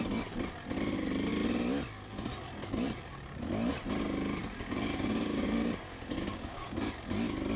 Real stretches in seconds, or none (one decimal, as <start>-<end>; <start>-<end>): 0.0-4.4; 6.7-7.6